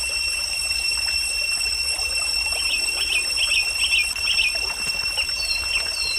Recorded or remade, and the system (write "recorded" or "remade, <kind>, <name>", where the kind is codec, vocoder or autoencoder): recorded